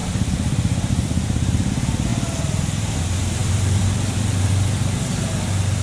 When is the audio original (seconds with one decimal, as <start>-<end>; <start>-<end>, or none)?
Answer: 2.1-3.0